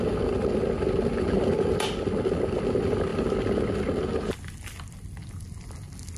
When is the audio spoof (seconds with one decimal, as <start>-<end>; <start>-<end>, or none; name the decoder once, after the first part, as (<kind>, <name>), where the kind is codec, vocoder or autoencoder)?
none